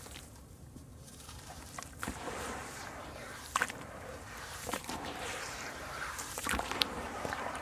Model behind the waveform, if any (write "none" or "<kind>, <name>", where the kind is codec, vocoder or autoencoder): vocoder, BigVGAN v2